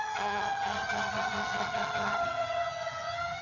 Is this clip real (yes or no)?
no